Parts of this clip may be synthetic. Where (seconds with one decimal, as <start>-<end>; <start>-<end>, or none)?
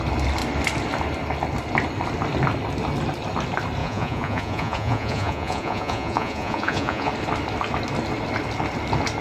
3.8-7.1